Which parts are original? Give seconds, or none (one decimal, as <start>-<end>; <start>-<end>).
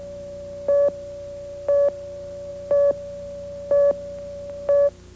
0.0-5.2